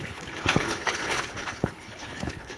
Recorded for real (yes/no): no